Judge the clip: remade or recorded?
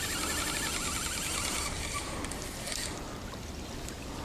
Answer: recorded